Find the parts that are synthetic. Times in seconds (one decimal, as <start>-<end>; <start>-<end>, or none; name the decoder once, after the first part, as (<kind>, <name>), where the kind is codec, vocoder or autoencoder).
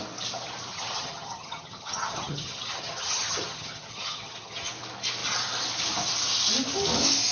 0.7-4.7 (vocoder, HiFi-GAN)